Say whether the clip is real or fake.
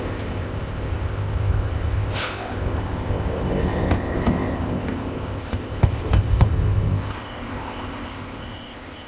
fake